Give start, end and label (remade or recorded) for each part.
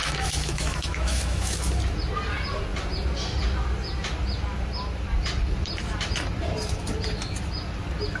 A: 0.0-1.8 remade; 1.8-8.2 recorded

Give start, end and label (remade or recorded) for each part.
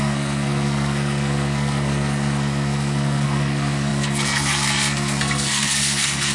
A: 0.0-6.3 remade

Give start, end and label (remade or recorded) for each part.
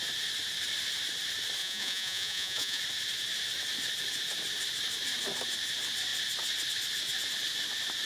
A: 0.0-1.6 recorded; 1.6-2.8 remade; 2.8-8.1 recorded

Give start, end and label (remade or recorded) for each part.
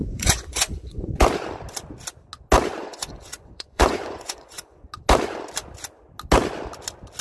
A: 0.0-1.1 remade; 1.1-2.8 recorded; 2.8-4.9 remade; 4.9-7.2 recorded